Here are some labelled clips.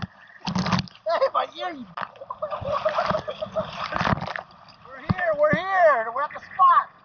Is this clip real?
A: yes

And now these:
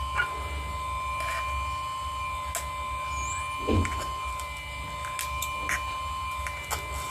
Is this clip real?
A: yes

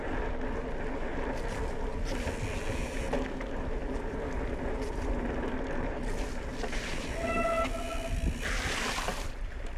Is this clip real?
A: yes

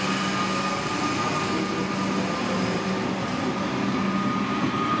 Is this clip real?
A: yes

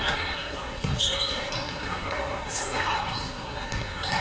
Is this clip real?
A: no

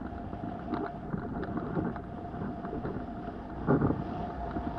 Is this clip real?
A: yes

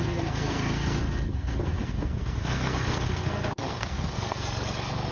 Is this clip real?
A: no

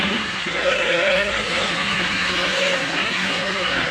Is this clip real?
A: no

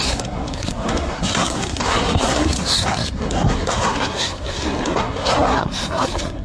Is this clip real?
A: no